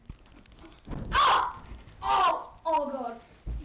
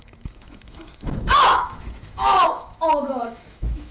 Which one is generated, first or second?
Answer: second